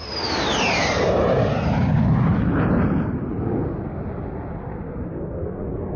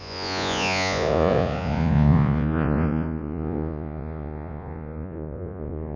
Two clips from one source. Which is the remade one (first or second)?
second